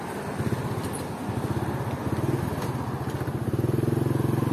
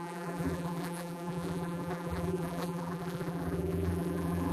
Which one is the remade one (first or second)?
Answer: second